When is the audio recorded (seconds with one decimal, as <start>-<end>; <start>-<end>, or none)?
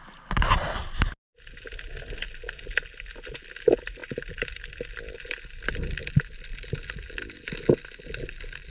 0.0-8.7